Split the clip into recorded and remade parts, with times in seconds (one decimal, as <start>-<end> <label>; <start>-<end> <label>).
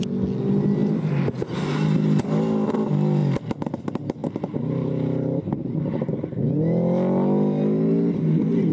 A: 0.0-0.8 recorded; 0.8-1.4 remade; 1.4-4.2 recorded; 4.2-6.4 remade; 6.4-8.7 recorded